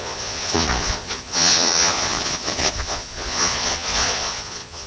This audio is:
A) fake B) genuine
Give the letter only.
A